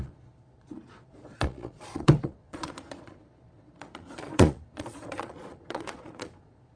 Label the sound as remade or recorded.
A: remade